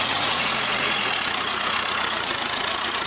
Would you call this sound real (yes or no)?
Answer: no